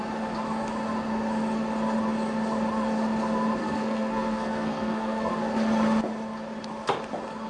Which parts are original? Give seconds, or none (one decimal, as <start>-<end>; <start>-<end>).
0.0-3.6; 5.3-7.5